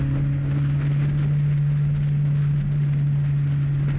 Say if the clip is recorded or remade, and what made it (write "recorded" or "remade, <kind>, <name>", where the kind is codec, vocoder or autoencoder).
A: recorded